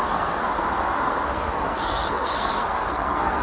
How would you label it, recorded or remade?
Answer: remade